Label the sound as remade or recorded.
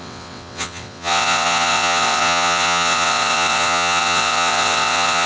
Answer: remade